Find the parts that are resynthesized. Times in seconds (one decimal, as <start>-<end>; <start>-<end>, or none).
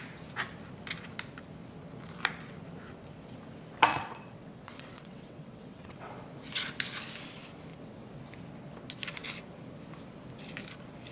3.9-6.1; 7.7-8.2